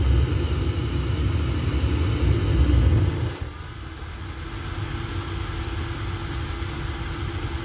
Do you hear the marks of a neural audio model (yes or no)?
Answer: no